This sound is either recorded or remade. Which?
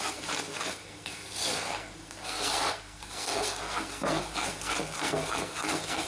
remade